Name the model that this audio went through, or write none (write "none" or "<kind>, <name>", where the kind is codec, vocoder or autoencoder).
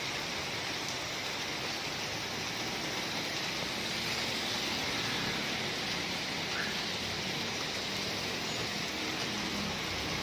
none